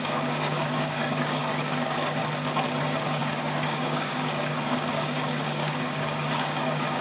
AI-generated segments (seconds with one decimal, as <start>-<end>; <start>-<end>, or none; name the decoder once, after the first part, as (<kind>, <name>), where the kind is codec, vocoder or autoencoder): 0.0-2.2 (codec, DAC); 2.8-7.0